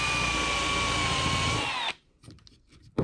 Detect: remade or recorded recorded